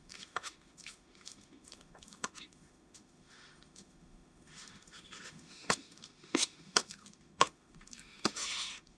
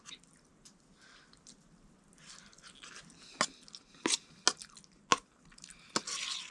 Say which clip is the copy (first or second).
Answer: first